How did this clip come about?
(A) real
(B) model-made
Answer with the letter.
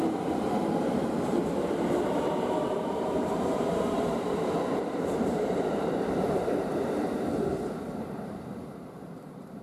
B